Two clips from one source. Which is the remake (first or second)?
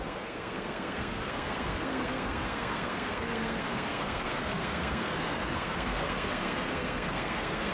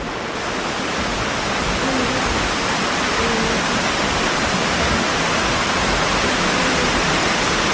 first